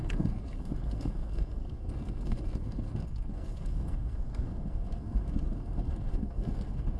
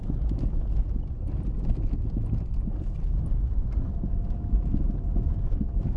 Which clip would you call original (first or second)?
second